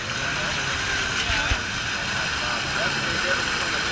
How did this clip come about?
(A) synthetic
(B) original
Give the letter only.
B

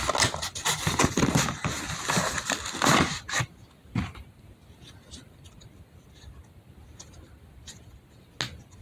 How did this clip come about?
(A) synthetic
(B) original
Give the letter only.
B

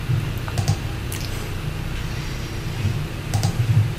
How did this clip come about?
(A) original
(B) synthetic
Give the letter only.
A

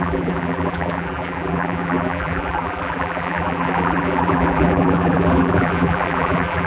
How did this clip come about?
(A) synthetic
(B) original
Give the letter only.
A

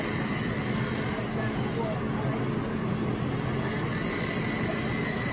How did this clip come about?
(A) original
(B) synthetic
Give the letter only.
A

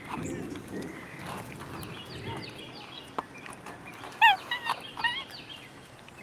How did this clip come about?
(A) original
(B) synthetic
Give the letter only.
A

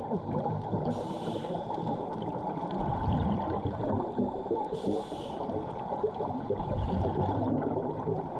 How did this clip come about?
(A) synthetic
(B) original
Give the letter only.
A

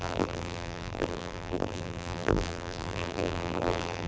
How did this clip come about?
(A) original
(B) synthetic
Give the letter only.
B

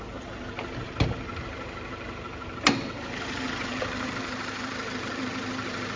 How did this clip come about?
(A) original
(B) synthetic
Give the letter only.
B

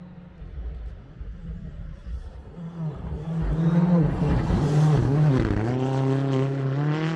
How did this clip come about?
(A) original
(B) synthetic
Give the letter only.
A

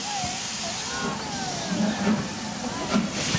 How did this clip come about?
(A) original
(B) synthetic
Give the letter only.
A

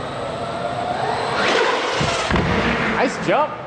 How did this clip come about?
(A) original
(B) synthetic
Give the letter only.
A